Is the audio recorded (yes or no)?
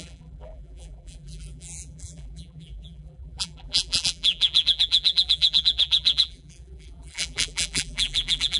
no